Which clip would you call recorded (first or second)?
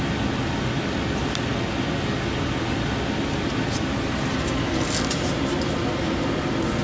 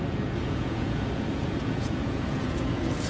first